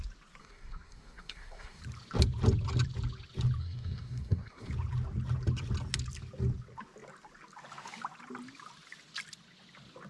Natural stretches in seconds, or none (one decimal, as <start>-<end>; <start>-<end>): 0.0-0.4; 1.8-3.6; 4.7-10.1